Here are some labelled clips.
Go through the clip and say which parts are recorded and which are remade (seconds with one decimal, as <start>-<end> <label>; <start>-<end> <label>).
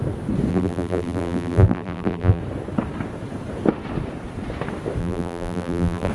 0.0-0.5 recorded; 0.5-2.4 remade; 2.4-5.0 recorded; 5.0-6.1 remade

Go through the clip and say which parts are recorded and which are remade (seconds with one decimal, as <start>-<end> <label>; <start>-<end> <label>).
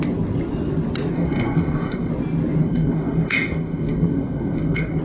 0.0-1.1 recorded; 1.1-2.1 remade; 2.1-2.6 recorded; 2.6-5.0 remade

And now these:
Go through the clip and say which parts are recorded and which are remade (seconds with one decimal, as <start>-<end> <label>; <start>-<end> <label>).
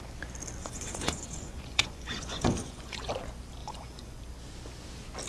0.0-0.6 recorded; 0.6-3.1 remade; 3.1-3.6 recorded; 3.6-4.2 remade; 4.2-5.3 recorded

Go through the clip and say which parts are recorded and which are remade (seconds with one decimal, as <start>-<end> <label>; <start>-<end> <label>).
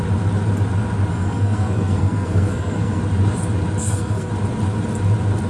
0.0-1.1 recorded; 1.1-3.0 remade; 3.0-3.8 recorded; 3.8-4.3 remade; 4.3-5.5 recorded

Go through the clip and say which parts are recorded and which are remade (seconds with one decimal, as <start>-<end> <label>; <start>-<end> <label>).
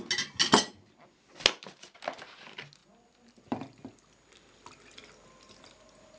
0.0-2.8 recorded; 2.8-4.5 remade; 4.5-6.2 recorded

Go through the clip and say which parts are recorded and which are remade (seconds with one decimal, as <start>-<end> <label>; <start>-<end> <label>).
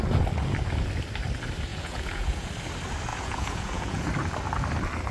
0.0-1.7 recorded; 1.7-2.5 remade; 2.5-3.1 recorded; 3.1-4.0 remade; 4.0-5.1 recorded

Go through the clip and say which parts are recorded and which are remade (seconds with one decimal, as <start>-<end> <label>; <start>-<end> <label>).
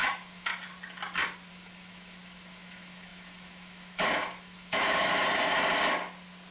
0.0-0.5 remade; 0.5-1.5 recorded; 1.5-5.7 remade; 5.7-6.5 recorded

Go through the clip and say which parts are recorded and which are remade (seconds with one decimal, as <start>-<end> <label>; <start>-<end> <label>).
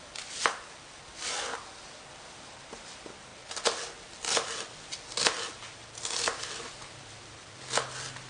0.0-8.3 recorded